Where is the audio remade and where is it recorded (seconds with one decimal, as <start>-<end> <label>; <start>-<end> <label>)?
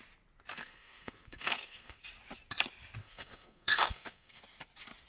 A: 0.0-0.5 recorded; 0.5-2.0 remade; 2.0-3.0 recorded; 3.0-4.4 remade; 4.4-5.1 recorded